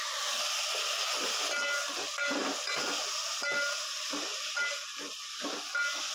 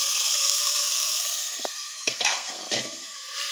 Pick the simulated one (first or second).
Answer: second